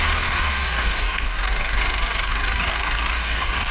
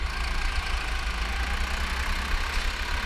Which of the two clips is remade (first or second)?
first